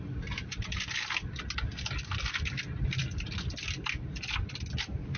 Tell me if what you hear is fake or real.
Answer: real